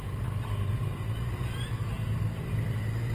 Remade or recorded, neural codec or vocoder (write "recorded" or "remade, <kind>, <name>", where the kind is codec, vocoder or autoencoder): recorded